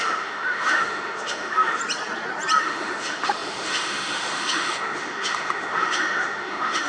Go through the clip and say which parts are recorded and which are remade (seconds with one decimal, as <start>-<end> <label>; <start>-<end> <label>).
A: 0.0-1.8 remade; 1.8-2.6 recorded; 2.6-6.9 remade